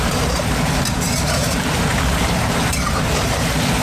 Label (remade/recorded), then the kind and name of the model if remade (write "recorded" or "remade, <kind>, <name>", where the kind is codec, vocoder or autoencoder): remade, vocoder, BigVGAN v2